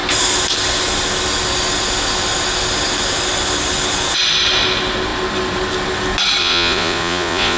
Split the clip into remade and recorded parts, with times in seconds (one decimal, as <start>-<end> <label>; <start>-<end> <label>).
0.0-6.4 recorded; 6.4-7.6 remade

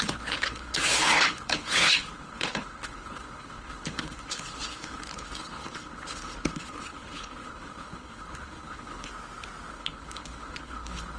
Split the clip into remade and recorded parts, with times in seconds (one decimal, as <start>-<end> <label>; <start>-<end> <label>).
0.0-9.1 remade; 9.1-9.7 recorded; 9.7-11.2 remade